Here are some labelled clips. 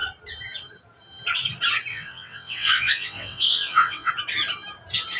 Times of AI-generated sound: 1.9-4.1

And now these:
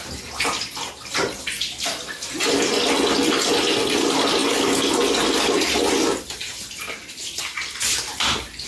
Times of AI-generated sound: none

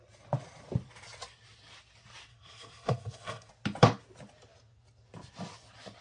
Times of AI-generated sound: 2.3-3.5

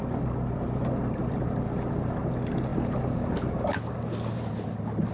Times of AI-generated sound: none

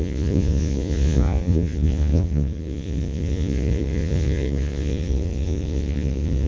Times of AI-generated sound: 0.0-6.5